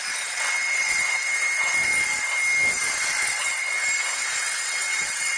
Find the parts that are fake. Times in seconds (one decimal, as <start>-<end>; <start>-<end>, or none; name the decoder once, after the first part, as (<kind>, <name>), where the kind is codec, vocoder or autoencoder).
0.0-1.9 (vocoder, WaveNeXt); 3.0-3.8; 4.4-5.4